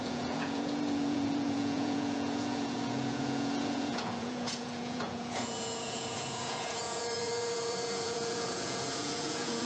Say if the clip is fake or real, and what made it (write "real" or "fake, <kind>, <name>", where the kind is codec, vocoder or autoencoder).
fake, vocoder, Vocos